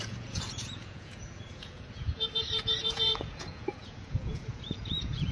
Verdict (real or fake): fake